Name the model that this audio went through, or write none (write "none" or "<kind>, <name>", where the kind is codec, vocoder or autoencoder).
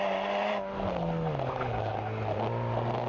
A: none